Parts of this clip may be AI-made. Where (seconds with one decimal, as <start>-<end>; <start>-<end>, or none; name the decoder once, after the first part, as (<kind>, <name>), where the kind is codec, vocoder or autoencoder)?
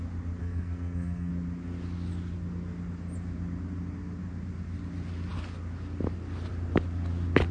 0.4-1.3 (codec, SNAC)